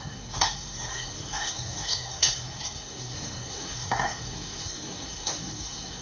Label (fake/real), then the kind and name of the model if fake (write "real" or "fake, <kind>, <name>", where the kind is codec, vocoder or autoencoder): fake, codec, SNAC